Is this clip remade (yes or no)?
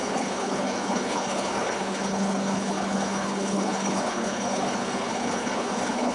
yes